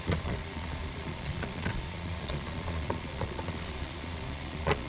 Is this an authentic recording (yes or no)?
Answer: no